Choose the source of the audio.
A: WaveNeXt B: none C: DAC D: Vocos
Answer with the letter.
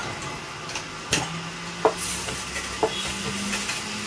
B